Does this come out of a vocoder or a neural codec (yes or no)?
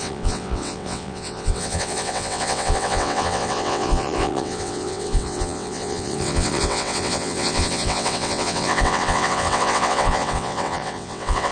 yes